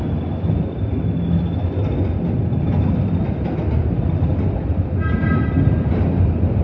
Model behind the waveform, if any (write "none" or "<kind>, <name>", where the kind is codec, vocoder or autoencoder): none